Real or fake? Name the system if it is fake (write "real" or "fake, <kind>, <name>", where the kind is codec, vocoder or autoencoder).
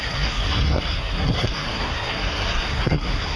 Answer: fake, codec, SNAC